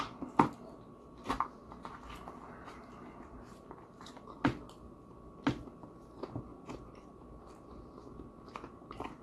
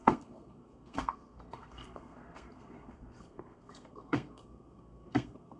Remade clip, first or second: second